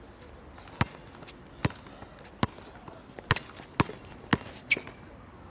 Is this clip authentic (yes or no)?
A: yes